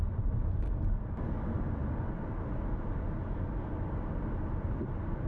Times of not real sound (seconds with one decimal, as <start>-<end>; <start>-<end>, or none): 0.0-1.8